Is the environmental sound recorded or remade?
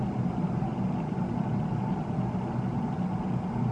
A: recorded